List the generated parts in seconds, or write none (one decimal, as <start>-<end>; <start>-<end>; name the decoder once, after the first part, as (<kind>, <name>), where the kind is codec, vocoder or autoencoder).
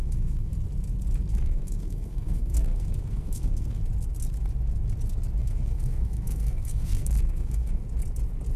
0.0-0.5 (codec, SNAC); 1.3-3.8; 5.4-7.8